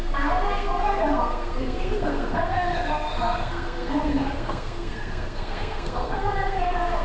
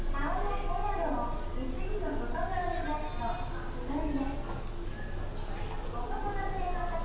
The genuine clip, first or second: second